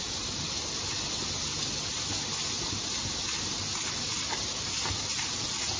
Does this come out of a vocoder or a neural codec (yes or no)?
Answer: no